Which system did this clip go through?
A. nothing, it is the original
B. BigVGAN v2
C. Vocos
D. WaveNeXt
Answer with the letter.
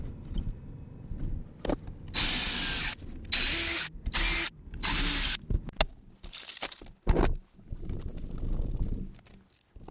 A